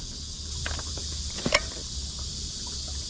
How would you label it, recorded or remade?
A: recorded